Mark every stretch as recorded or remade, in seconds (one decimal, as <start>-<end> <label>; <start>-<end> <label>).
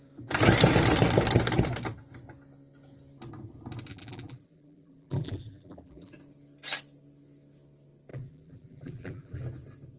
0.0-3.9 recorded; 3.9-6.1 remade; 6.1-8.1 recorded; 8.1-9.4 remade; 9.4-10.0 recorded